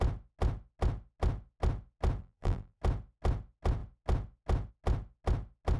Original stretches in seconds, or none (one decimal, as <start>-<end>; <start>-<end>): 0.0-2.2; 2.8-5.8